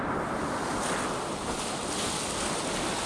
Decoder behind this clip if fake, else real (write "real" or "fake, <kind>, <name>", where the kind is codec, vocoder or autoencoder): real